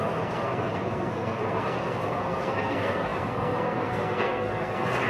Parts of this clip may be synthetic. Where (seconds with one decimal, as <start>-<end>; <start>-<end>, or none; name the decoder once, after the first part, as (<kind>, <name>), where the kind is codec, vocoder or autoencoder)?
0.0-5.1 (codec, SNAC)

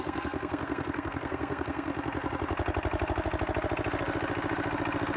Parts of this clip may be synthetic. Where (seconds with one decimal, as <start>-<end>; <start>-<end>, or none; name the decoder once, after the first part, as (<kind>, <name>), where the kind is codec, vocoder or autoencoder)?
0.0-1.9 (codec, SNAC)

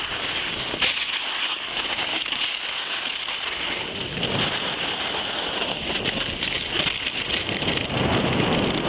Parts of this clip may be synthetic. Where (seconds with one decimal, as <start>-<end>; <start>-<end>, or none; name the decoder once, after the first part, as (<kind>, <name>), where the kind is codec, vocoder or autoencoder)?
1.5-3.1 (codec, DAC)

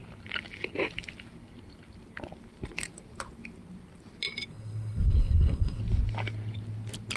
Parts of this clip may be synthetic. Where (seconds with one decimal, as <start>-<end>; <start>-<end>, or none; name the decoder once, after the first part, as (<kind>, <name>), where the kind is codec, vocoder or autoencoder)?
4.5-5.8 (codec, SNAC)

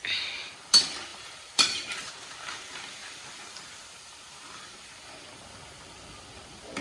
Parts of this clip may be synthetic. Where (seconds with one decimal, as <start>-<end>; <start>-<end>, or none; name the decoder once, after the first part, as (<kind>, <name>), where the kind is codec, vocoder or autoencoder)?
1.1-5.1 (vocoder, BigVGAN v2)

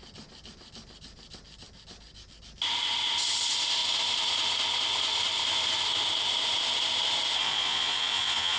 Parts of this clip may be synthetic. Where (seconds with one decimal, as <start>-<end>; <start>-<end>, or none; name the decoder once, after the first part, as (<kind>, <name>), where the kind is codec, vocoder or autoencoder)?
7.4-8.6 (vocoder, Vocos)